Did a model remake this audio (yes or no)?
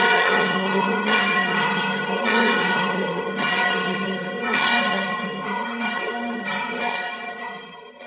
yes